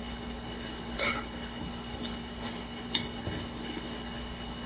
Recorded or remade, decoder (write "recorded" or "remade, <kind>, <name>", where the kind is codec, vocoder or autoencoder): remade, codec, HILCodec